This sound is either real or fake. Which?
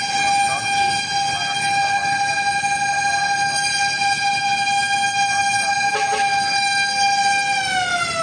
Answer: real